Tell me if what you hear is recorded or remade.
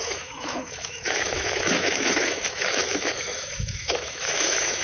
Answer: remade